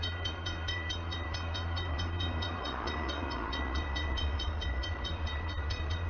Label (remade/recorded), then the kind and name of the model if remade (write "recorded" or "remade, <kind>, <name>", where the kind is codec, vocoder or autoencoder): remade, vocoder, Vocos